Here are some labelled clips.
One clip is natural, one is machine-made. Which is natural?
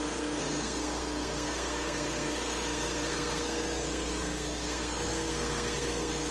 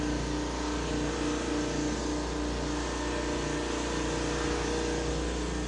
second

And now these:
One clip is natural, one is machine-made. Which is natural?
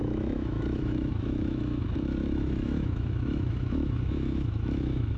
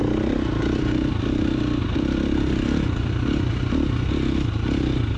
second